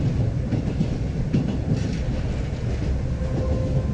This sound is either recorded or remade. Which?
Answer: recorded